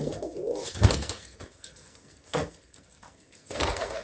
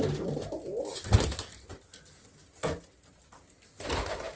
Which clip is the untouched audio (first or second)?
second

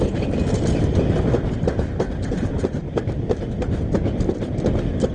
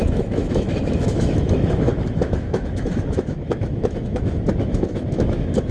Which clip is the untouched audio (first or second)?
first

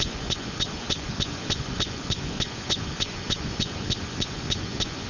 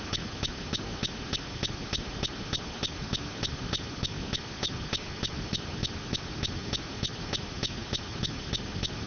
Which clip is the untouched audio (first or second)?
second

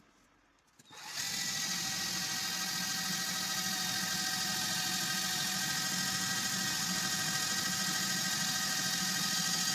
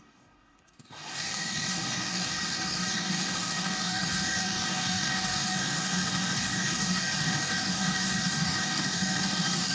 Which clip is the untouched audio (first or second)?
first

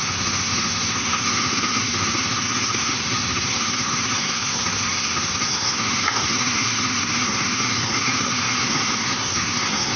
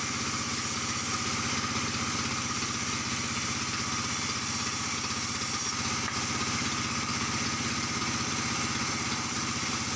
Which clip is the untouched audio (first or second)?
second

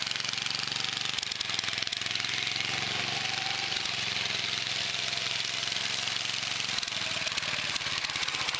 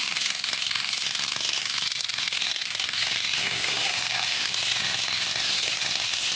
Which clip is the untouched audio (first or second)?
first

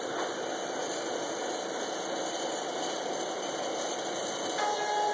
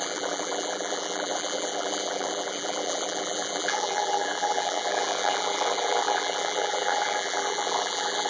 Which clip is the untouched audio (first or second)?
first